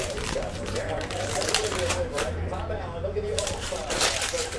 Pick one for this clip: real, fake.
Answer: fake